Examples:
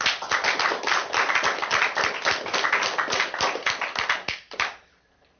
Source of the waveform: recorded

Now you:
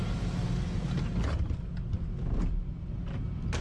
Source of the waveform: recorded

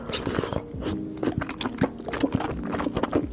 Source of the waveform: recorded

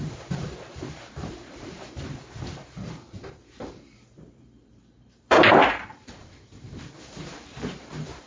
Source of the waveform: remade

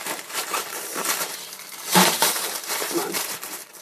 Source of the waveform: remade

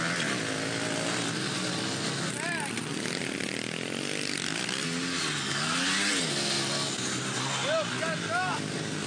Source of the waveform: recorded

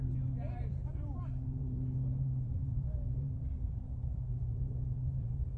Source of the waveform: remade